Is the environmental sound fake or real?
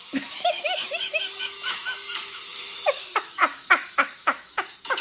fake